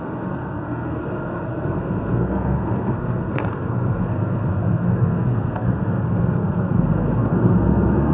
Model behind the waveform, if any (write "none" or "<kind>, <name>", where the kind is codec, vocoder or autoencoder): codec, SNAC